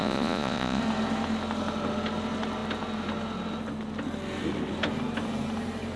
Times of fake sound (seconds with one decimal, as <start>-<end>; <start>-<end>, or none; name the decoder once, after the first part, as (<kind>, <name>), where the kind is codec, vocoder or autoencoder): 0.0-0.8 (vocoder, Vocos)